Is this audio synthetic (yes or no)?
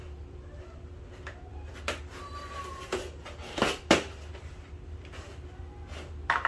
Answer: no